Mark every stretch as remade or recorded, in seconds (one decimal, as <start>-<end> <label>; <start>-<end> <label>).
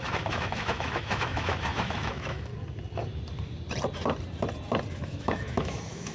0.0-2.5 remade; 2.5-4.9 recorded; 4.9-6.1 remade